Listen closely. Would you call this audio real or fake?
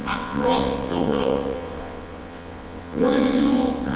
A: fake